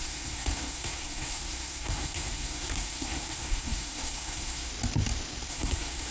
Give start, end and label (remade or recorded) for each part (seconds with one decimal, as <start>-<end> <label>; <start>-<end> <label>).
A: 0.0-4.7 remade; 4.7-5.5 recorded; 5.5-6.1 remade